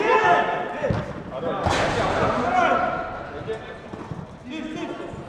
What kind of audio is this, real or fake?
real